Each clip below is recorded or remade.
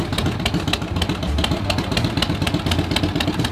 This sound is recorded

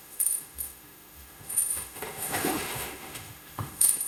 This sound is remade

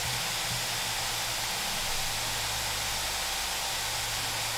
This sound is recorded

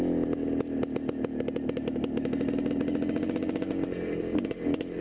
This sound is recorded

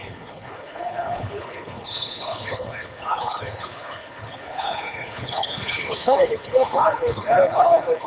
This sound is remade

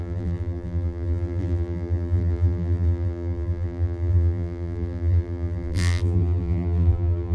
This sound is remade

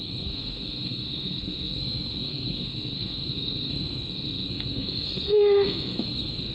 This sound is remade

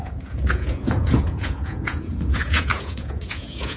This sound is remade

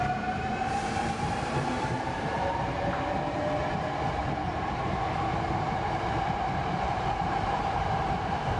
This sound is remade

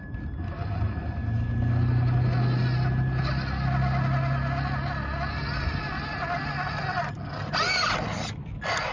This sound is recorded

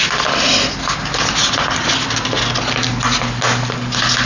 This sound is recorded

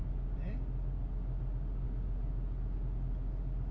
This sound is recorded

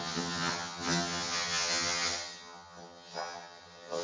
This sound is remade